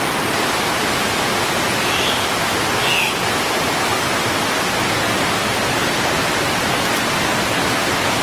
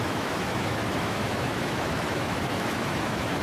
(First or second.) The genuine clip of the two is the first